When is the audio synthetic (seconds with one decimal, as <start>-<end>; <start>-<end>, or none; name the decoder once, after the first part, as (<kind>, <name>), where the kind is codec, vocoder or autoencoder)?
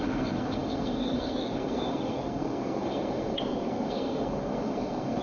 0.0-5.2 (codec, SNAC)